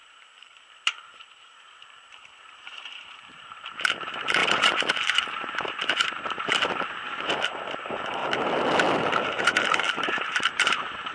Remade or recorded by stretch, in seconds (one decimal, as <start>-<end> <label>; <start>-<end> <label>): 0.0-8.2 remade; 8.2-9.0 recorded; 9.0-11.1 remade